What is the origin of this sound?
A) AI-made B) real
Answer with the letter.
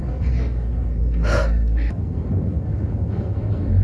A